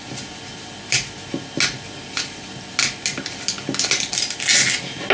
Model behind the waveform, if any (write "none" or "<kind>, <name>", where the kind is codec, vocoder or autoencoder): none